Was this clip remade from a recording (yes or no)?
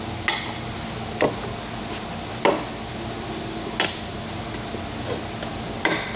no